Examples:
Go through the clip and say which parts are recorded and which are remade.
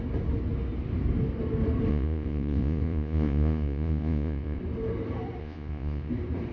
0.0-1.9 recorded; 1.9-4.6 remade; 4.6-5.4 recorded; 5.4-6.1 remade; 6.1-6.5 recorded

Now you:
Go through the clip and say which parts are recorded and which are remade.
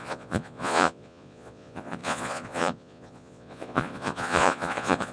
0.0-5.1 remade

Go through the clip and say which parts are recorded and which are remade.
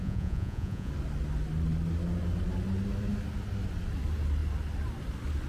0.0-0.9 remade; 0.9-5.5 recorded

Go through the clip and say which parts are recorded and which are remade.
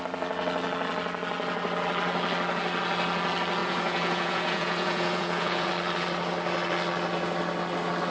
0.0-3.6 recorded; 3.6-5.7 remade; 5.7-8.1 recorded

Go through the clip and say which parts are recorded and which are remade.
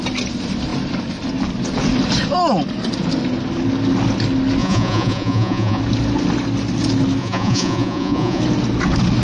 0.0-4.6 recorded; 4.6-5.8 remade; 5.8-7.2 recorded; 7.2-8.4 remade; 8.4-9.2 recorded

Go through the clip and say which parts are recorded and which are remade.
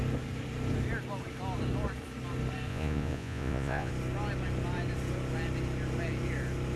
0.0-2.7 recorded; 2.7-3.9 remade; 3.9-6.8 recorded